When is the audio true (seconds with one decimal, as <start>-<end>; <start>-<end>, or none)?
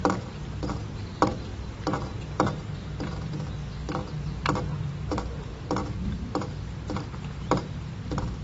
5.8-6.8